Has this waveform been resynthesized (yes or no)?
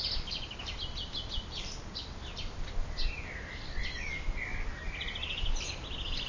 yes